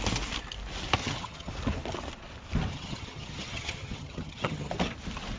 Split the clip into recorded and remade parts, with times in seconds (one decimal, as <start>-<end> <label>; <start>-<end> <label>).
0.0-1.0 recorded; 1.0-1.5 remade; 1.5-2.7 recorded; 2.7-4.7 remade; 4.7-5.4 recorded